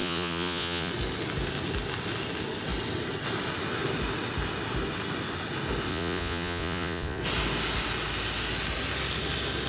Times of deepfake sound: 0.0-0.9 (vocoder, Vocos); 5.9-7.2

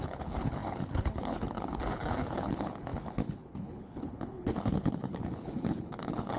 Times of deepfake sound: 0.0-6.4 (codec, HILCodec)

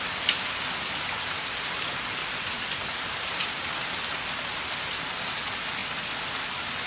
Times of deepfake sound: none